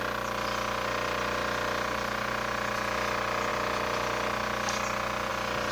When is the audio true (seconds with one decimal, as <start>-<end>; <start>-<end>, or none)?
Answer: 0.0-5.7